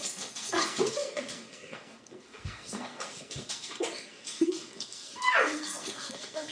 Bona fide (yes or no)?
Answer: no